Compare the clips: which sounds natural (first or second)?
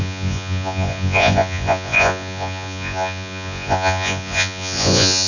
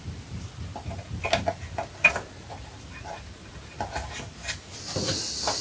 second